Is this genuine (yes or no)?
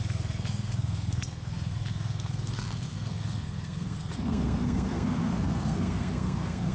no